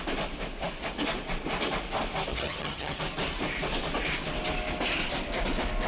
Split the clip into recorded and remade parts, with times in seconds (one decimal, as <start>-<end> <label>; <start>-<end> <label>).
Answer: 0.0-2.3 recorded; 2.3-3.0 remade; 3.0-5.9 recorded